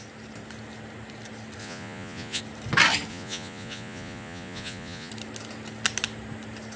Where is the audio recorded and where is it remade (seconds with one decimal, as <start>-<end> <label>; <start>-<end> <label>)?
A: 0.0-1.6 recorded; 1.6-2.4 remade; 2.4-3.1 recorded; 3.1-5.1 remade; 5.1-6.8 recorded